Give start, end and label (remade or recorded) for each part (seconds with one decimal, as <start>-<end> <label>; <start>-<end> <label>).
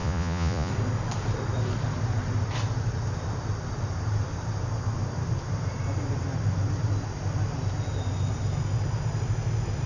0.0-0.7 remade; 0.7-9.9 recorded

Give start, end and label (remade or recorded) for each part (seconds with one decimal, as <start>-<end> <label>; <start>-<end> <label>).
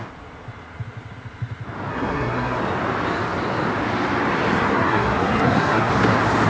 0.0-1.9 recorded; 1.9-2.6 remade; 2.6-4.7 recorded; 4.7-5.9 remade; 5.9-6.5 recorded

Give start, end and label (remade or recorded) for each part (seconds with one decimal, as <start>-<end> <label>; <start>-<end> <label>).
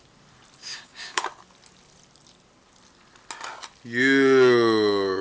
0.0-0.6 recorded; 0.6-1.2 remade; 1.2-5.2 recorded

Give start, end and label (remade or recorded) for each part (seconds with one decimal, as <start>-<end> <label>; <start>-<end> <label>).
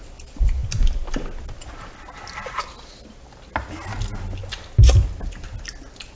0.0-6.2 recorded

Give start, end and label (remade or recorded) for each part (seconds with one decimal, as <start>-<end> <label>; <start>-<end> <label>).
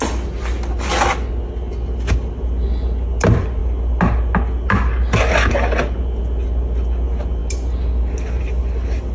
0.0-9.1 recorded